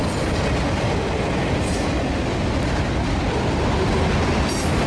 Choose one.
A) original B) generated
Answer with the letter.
A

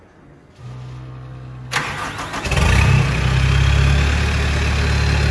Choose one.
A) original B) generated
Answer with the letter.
A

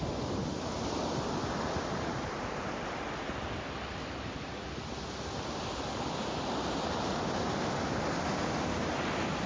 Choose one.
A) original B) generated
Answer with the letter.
A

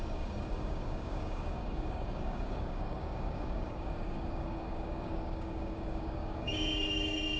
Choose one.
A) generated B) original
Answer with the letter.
A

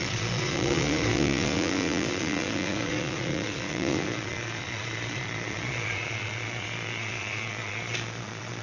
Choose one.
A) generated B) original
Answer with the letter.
A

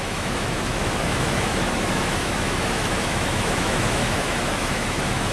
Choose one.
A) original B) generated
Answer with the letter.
B